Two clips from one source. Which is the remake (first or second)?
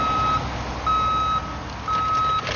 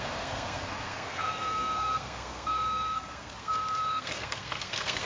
second